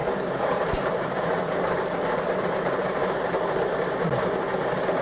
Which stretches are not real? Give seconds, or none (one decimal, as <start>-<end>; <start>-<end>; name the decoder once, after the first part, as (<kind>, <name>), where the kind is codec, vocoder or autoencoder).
0.0-3.0 (vocoder, BigVGAN v2)